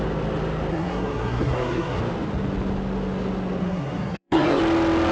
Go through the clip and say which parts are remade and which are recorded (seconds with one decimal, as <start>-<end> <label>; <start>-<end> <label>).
0.0-0.7 recorded; 0.7-2.0 remade; 2.0-3.6 recorded; 3.6-4.6 remade; 4.6-5.1 recorded

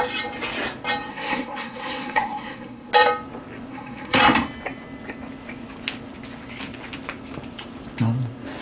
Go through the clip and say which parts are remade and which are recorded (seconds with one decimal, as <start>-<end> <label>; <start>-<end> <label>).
0.0-1.1 recorded; 1.1-2.9 remade; 2.9-3.7 recorded; 3.7-4.2 remade; 4.2-8.6 recorded

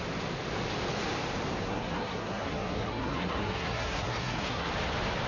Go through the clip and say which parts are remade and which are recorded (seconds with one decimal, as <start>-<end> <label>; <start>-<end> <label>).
0.0-1.6 recorded; 1.6-4.7 remade; 4.7-5.3 recorded

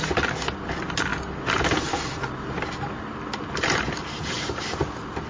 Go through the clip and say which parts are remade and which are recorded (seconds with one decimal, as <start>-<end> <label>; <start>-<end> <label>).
0.0-5.3 recorded

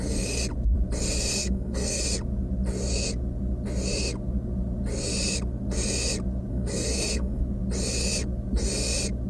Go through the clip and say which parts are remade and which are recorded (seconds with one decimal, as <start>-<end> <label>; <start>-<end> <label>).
0.0-1.4 recorded; 1.4-2.0 remade; 2.0-6.5 recorded; 6.5-7.4 remade; 7.4-9.3 recorded

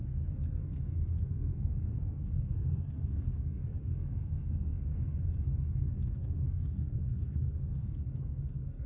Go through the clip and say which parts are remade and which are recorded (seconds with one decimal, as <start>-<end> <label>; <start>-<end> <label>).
0.0-5.1 remade; 5.1-5.6 recorded; 5.6-8.9 remade

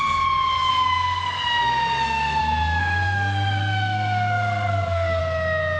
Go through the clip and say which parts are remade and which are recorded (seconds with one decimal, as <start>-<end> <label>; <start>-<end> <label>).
0.0-0.7 recorded; 0.7-2.4 remade; 2.4-2.8 recorded; 2.8-5.2 remade; 5.2-5.8 recorded

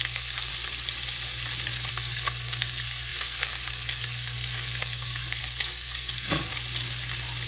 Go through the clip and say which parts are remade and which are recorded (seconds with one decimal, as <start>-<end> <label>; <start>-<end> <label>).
0.0-0.5 remade; 0.5-1.9 recorded; 1.9-6.5 remade; 6.5-7.5 recorded